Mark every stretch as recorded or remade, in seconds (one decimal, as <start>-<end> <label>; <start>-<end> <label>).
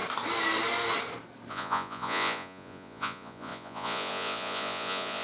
0.0-1.5 recorded; 1.5-5.2 remade